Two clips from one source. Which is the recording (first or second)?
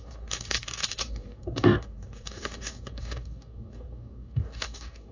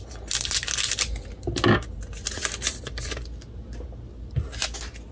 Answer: second